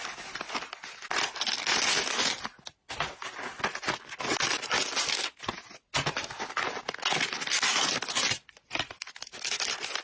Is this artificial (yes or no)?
no